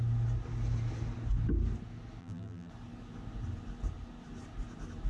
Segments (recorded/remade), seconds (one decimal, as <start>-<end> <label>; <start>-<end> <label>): 0.0-2.2 recorded; 2.2-2.7 remade; 2.7-5.1 recorded